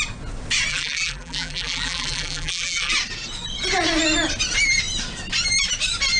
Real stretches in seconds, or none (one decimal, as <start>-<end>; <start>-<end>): 0.0-0.7; 2.9-6.2

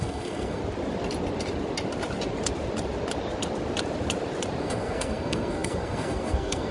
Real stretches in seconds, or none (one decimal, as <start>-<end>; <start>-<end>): 0.6-4.6

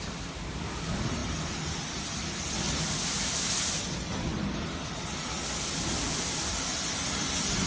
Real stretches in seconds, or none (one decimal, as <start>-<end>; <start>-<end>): 0.0-7.7

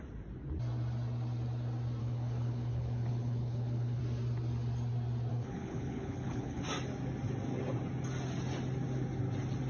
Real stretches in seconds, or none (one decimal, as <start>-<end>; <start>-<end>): 0.0-2.0; 4.0-5.3; 6.6-9.7

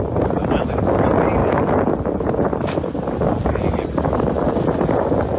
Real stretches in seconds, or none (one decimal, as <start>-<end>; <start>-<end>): 0.0-5.4

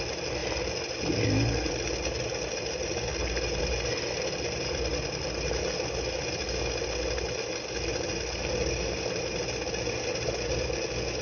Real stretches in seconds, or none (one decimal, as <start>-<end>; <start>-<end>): 0.0-11.2

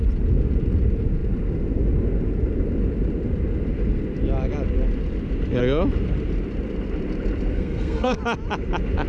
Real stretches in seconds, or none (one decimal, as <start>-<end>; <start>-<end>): 0.0-7.5; 8.2-9.1

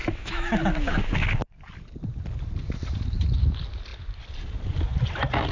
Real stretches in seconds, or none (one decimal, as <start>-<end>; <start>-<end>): 0.6-5.5